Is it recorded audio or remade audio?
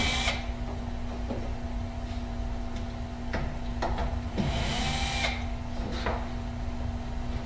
recorded